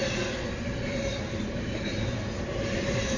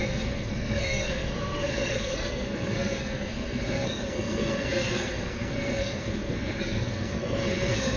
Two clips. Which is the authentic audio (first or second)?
first